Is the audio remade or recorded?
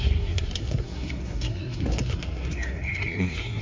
remade